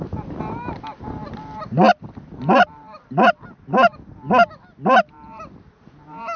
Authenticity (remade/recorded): recorded